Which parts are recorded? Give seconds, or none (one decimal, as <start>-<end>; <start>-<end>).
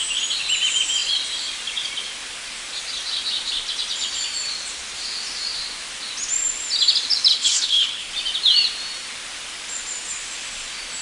0.0-7.3; 8.1-11.0